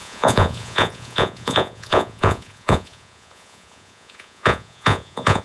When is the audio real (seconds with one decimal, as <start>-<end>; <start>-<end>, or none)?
none